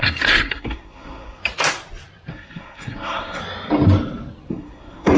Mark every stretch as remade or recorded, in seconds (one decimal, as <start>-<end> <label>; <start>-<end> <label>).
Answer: 0.0-1.4 remade; 1.4-2.3 recorded; 2.3-3.4 remade; 3.4-4.5 recorded; 4.5-5.2 remade